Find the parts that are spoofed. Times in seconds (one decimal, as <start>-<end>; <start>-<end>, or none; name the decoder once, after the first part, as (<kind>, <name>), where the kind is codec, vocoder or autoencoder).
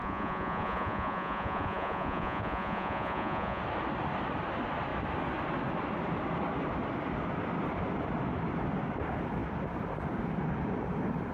0.0-3.6 (vocoder, Vocos)